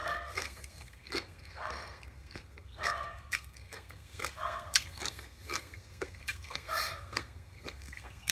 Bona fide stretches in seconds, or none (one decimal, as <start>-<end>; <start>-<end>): none